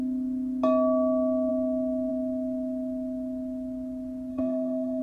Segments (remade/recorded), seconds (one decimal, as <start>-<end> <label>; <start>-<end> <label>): 0.0-4.3 recorded; 4.3-5.0 remade